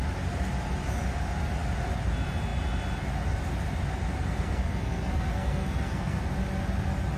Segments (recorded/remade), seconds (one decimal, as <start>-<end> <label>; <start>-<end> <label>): 0.0-4.2 recorded; 4.2-6.2 remade; 6.2-7.2 recorded

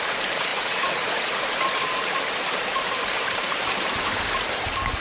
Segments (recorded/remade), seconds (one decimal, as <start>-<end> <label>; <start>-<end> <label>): 0.0-5.0 remade